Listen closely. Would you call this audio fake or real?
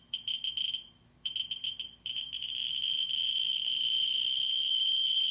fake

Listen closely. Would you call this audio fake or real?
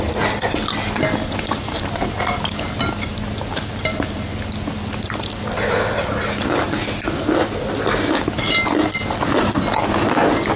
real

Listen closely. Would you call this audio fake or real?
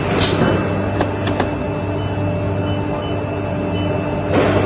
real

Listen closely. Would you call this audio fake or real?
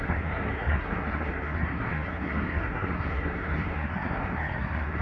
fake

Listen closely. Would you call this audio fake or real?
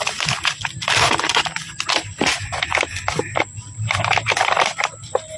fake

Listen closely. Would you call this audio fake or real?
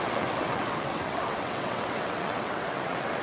fake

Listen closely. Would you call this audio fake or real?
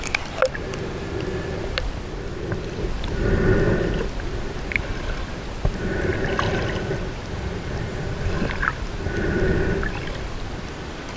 real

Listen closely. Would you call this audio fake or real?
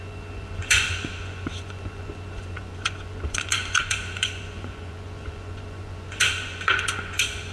fake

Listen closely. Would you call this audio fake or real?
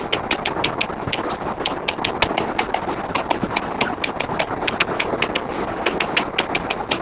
real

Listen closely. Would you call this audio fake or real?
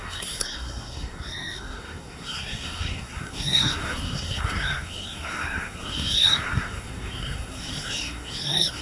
fake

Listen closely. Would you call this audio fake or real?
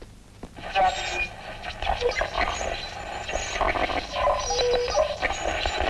real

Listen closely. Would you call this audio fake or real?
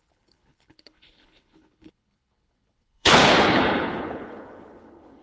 fake